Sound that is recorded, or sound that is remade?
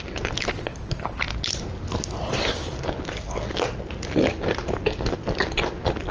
recorded